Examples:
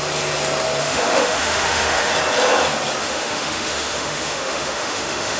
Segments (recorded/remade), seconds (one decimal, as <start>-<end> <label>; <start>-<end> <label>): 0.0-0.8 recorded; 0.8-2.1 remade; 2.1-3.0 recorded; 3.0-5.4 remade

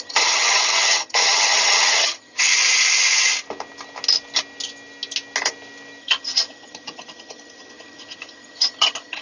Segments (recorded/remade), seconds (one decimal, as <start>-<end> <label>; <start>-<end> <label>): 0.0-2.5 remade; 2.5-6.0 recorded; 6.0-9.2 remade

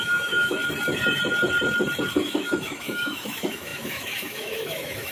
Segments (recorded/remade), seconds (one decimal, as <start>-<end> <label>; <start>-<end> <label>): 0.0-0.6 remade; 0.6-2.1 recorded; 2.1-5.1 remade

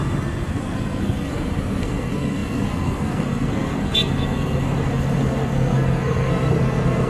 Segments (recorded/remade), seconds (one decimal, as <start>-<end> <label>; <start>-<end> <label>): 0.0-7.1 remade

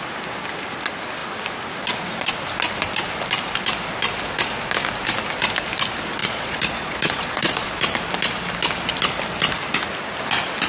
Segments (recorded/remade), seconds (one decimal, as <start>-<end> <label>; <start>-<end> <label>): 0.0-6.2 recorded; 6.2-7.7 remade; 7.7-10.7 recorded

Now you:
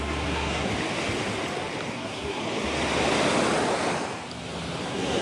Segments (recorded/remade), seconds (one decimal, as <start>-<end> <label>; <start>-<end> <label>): 0.0-0.7 remade; 0.7-1.9 recorded; 1.9-2.4 remade; 2.4-4.8 recorded; 4.8-5.2 remade

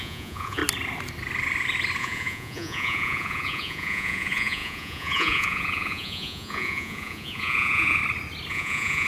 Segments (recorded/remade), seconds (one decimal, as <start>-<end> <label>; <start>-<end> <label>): 0.0-0.6 remade; 0.6-2.0 recorded; 2.0-8.0 remade; 8.0-8.5 recorded; 8.5-9.1 remade